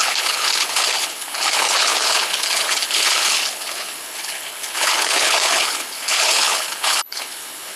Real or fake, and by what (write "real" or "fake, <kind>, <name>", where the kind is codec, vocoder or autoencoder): fake, codec, HILCodec